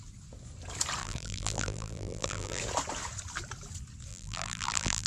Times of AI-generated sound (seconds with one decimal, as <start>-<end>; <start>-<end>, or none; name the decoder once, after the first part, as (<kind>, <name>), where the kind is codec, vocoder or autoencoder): 1.0-2.6 (vocoder, BigVGAN v2); 4.1-5.1